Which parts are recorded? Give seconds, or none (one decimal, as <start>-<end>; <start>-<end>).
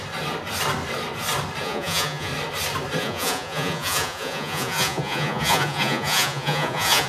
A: 0.0-1.6; 2.3-3.0